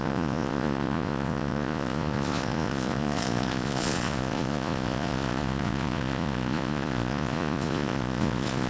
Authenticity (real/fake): fake